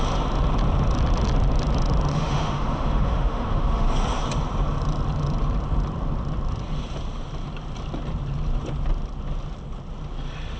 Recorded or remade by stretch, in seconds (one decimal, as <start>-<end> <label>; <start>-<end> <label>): 0.0-2.1 recorded; 2.1-3.9 remade; 3.9-10.6 recorded